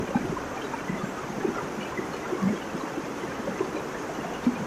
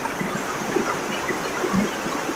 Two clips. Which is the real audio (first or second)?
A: second